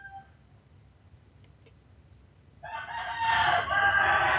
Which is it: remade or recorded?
recorded